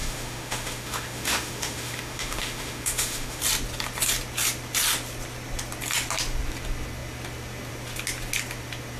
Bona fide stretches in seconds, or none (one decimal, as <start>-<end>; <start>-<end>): 3.4-9.0